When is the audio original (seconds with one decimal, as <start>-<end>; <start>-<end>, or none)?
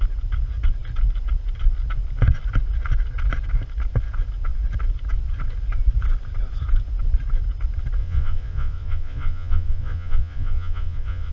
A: 0.0-8.0